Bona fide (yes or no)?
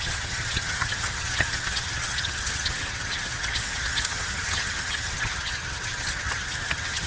no